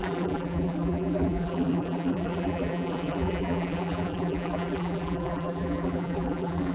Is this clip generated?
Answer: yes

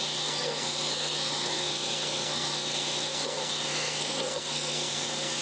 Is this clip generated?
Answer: yes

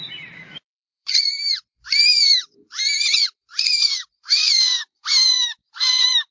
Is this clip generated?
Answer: yes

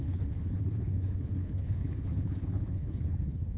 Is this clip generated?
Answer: yes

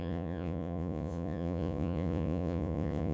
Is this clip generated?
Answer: yes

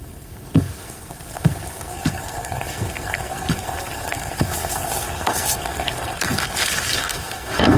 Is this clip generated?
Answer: yes